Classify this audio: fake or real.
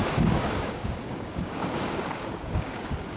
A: fake